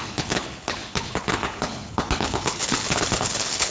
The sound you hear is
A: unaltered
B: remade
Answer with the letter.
B